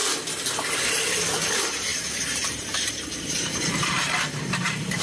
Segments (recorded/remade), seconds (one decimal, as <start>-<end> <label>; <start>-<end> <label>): 0.0-1.9 recorded; 1.9-5.0 remade